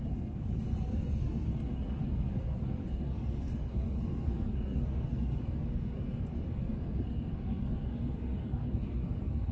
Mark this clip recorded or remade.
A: remade